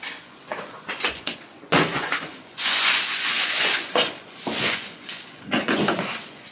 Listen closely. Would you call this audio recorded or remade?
remade